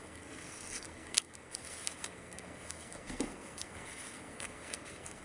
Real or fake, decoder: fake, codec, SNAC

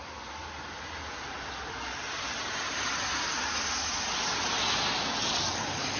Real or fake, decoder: real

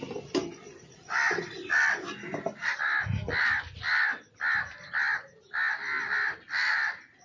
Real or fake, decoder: real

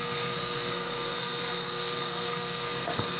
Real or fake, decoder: fake, codec, SNAC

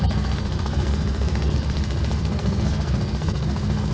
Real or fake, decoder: fake, codec, SNAC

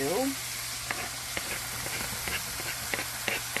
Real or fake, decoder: real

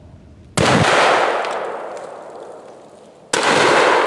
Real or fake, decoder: real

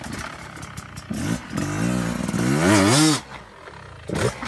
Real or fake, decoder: real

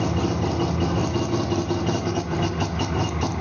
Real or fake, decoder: real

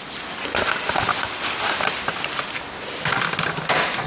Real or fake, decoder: real